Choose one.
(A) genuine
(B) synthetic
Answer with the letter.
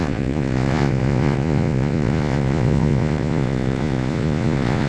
B